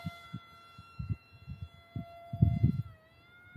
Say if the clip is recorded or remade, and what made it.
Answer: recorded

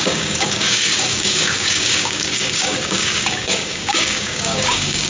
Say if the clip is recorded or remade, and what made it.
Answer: remade, codec, DAC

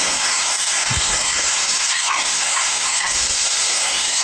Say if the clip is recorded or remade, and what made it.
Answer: remade, codec, SNAC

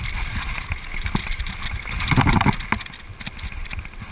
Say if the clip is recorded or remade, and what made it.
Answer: recorded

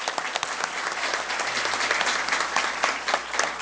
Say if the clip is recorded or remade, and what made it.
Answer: recorded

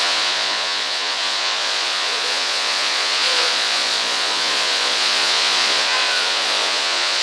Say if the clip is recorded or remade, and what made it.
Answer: remade, vocoder, Vocos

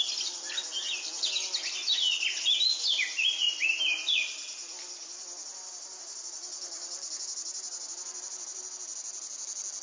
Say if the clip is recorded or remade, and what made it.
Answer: recorded